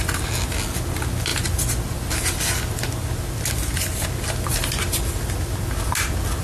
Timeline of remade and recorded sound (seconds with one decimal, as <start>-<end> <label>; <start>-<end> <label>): 0.0-6.4 recorded